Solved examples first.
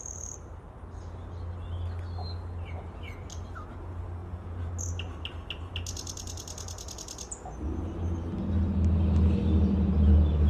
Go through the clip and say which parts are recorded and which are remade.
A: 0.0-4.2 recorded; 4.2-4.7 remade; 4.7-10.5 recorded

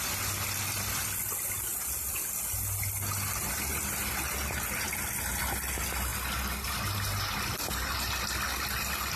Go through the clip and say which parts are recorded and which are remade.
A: 0.0-9.2 recorded

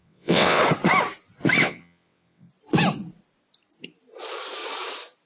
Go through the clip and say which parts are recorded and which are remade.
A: 0.0-0.6 remade; 0.6-1.6 recorded; 1.6-2.5 remade; 2.5-5.3 recorded

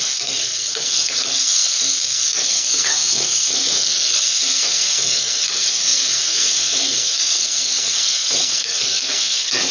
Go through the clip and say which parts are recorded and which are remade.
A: 0.0-9.7 remade

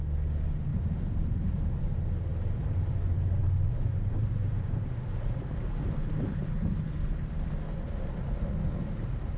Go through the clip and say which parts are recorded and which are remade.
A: 0.0-0.7 recorded; 0.7-1.8 remade; 1.8-2.3 recorded; 2.3-2.9 remade; 2.9-3.4 recorded; 3.4-6.9 remade; 6.9-9.4 recorded

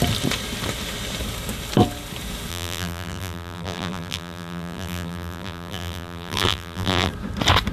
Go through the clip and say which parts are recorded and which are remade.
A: 0.0-2.5 recorded; 2.5-7.1 remade; 7.1-7.7 recorded

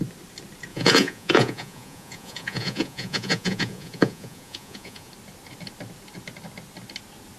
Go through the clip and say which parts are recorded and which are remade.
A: 0.0-0.7 recorded; 0.7-5.1 remade; 5.1-7.4 recorded

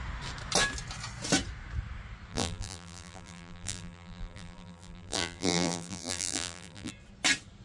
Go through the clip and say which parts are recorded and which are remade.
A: 0.0-2.3 recorded; 2.3-6.9 remade; 6.9-7.6 recorded